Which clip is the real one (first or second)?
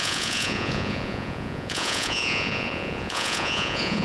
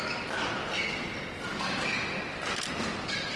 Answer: second